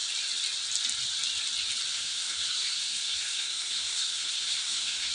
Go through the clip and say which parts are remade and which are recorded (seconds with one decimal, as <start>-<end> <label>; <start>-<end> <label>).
0.0-1.9 recorded; 1.9-5.1 remade